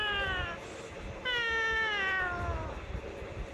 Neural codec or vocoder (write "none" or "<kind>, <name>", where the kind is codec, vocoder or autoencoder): none